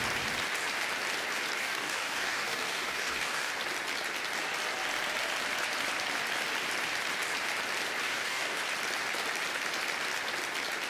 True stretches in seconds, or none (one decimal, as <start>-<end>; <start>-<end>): 0.0-1.6; 3.5-8.0; 8.6-10.9

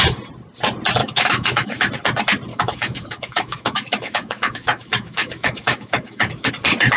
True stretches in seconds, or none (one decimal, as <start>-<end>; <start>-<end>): 0.0-1.0; 1.9-2.5; 6.5-7.0

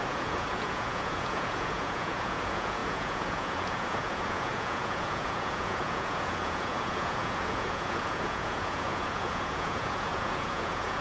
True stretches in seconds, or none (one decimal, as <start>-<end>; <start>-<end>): none

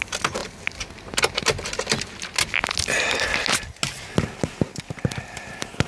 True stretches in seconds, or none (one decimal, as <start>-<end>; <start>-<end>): 0.0-5.9

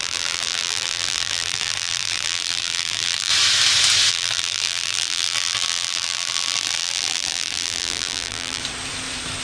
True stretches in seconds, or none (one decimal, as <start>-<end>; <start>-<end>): 3.3-4.1; 8.6-9.4

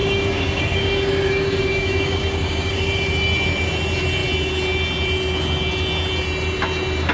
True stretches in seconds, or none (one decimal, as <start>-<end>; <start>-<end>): 2.8-7.1

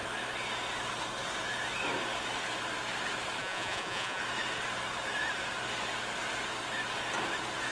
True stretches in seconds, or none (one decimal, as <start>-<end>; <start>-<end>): 0.0-3.4; 4.2-7.7

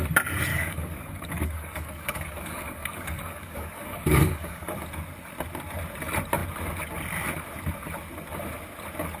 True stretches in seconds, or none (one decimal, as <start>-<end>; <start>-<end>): 0.0-0.5; 4.7-9.2